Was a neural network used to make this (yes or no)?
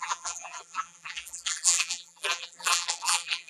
yes